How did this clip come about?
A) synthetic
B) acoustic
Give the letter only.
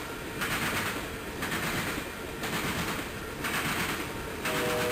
B